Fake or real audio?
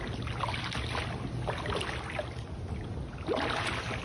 real